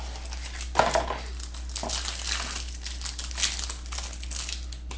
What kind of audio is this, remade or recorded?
recorded